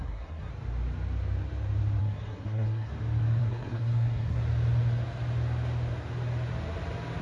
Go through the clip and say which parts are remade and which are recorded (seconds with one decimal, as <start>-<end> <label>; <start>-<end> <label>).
0.0-0.5 remade; 0.5-2.0 recorded; 2.0-2.9 remade; 2.9-3.4 recorded; 3.4-4.4 remade; 4.4-7.2 recorded